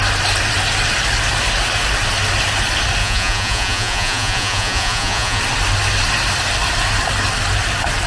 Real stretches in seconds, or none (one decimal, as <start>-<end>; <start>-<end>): 0.0-3.0; 5.4-8.1